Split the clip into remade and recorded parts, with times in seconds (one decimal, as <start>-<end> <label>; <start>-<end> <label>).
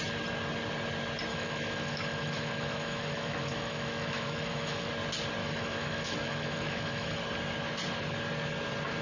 0.0-1.3 recorded; 1.3-4.9 remade; 4.9-5.4 recorded; 5.4-7.2 remade; 7.2-9.0 recorded